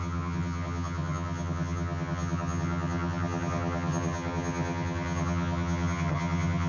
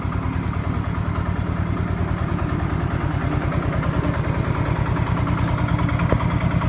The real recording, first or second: second